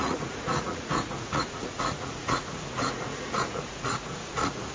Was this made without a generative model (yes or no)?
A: no